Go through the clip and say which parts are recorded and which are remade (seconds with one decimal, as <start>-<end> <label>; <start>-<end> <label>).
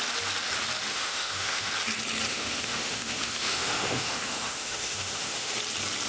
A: 0.0-0.9 recorded; 0.9-1.7 remade; 1.7-2.3 recorded; 2.3-5.5 remade; 5.5-6.1 recorded